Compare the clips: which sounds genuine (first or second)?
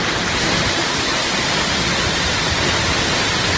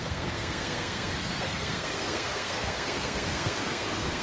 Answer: first